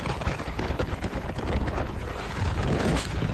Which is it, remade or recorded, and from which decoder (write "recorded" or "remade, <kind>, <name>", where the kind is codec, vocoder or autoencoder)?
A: remade, codec, HILCodec